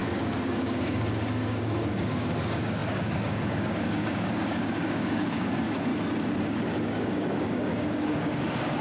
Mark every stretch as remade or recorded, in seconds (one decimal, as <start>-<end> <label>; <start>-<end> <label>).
0.0-5.9 remade; 5.9-6.4 recorded; 6.4-8.8 remade

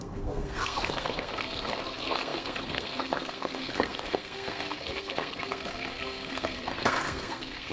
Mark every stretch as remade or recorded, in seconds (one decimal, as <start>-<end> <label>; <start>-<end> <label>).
0.0-7.7 remade